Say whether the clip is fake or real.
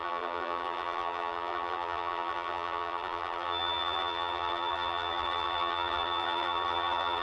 fake